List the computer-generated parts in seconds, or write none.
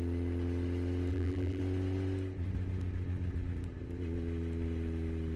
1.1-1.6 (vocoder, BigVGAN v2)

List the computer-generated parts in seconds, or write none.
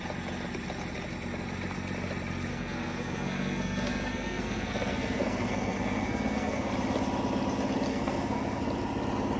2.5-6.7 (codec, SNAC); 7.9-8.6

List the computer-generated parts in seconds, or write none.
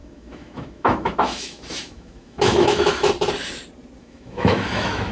0.0-3.1 (autoencoder, DAC-VAE); 4.0-5.1